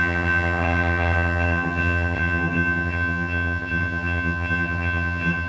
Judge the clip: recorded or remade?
remade